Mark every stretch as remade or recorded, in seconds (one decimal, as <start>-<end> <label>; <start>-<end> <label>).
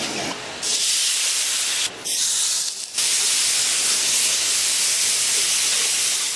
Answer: 0.0-3.7 recorded; 3.7-4.5 remade; 4.5-6.4 recorded